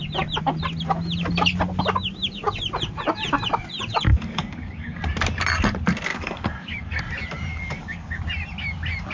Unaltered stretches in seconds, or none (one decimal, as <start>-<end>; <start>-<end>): 0.0-4.1; 5.0-6.1; 7.0-7.5; 8.2-9.1